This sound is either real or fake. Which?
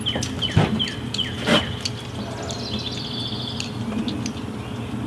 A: real